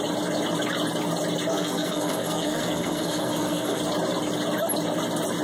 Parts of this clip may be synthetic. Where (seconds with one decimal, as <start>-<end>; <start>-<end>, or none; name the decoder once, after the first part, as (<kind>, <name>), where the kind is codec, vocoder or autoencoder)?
1.5-3.8 (codec, SNAC)